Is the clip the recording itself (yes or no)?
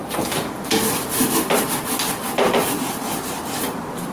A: yes